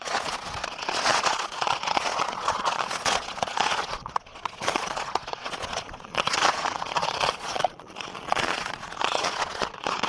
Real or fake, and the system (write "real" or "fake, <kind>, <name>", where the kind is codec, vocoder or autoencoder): fake, vocoder, Vocos